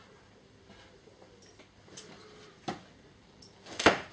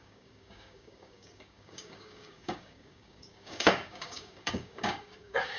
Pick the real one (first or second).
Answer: first